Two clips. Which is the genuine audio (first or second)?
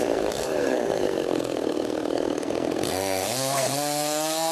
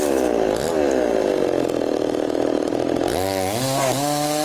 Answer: second